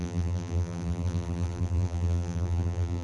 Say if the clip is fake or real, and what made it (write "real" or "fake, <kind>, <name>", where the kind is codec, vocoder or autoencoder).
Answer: fake, vocoder, BigVGAN v2